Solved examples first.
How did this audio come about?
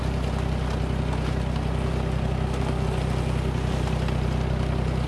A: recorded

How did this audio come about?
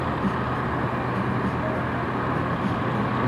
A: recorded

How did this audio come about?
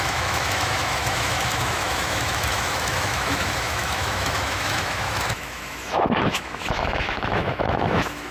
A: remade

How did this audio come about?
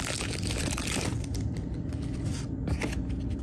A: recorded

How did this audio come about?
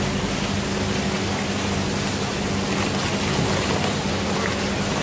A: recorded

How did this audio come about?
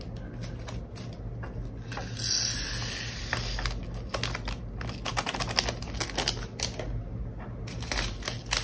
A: recorded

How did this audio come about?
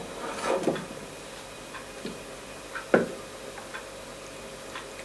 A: recorded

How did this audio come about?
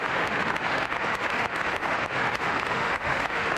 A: remade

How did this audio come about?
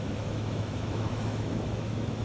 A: remade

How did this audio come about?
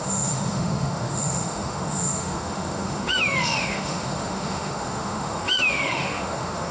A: remade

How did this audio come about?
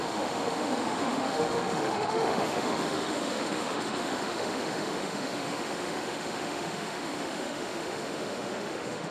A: remade